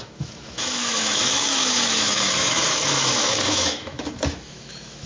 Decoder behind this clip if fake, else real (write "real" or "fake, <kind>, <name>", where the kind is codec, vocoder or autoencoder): fake, autoencoder, DAC-VAE